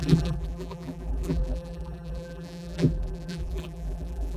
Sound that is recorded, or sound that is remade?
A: remade